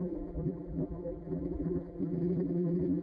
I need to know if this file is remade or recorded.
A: remade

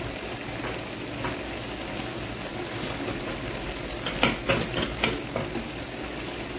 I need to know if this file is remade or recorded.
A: recorded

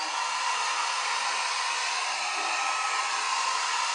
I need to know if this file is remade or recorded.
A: recorded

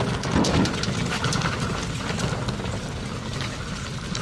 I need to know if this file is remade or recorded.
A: recorded